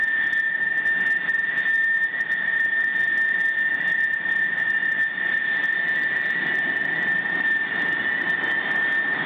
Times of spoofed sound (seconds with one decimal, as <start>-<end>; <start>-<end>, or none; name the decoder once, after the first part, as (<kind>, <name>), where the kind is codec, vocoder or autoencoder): none